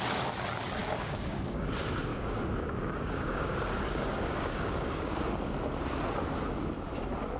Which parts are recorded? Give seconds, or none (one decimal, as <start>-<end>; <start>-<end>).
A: 0.0-0.8; 1.7-2.1; 5.3-7.4